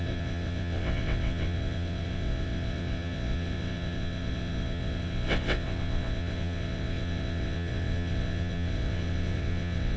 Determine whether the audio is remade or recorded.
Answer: remade